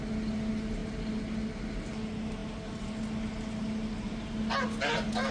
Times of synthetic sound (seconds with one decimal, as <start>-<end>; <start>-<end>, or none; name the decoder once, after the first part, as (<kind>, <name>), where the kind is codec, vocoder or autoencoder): none